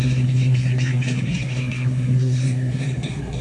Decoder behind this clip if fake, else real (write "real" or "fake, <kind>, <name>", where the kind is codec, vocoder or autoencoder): fake, codec, SNAC